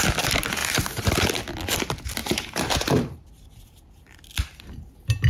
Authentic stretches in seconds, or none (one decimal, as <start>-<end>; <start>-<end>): 0.0-0.6; 1.3-2.2; 3.3-5.3